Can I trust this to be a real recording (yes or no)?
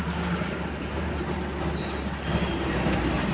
yes